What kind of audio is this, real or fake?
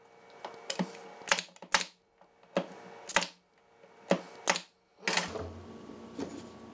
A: real